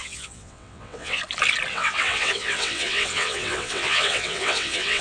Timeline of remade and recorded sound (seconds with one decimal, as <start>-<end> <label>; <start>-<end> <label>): 0.0-1.2 remade; 1.2-1.7 recorded; 1.7-5.0 remade